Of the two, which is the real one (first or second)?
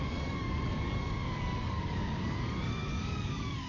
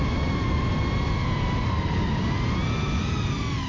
second